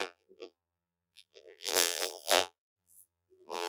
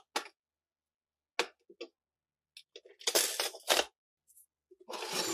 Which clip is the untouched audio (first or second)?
second